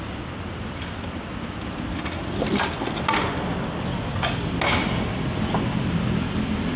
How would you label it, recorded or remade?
recorded